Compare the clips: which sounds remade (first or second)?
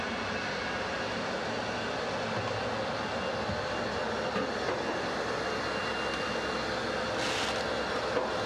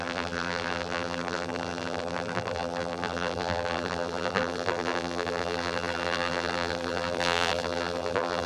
second